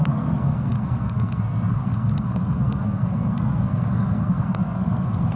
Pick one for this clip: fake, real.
fake